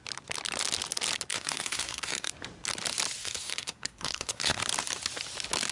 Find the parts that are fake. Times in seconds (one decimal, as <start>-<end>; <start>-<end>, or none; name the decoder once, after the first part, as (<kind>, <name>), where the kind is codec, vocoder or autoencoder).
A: 1.3-2.3 (codec, SNAC); 3.2-4.6